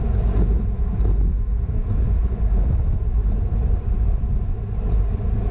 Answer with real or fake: real